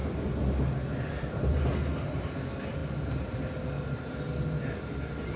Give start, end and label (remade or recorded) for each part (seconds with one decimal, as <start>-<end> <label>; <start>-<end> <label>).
0.0-5.4 recorded